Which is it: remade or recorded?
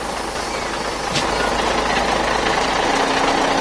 recorded